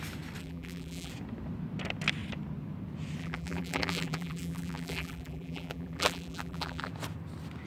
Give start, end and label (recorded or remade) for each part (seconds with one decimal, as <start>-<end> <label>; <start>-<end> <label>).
0.0-0.4 recorded; 0.4-1.1 remade; 1.1-3.2 recorded; 3.2-6.9 remade; 6.9-7.7 recorded